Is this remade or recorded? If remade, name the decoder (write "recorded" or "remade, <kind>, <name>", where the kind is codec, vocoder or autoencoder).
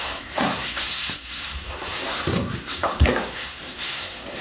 remade, codec, SNAC